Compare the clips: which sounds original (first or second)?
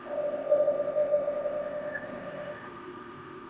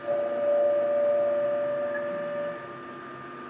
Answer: second